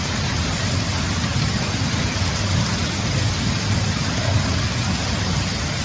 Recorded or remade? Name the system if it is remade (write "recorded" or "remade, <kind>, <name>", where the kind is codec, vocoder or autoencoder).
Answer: recorded